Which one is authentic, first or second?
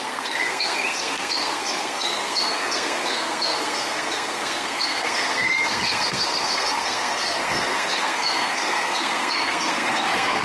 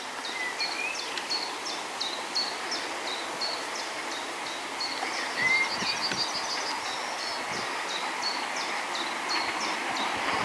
second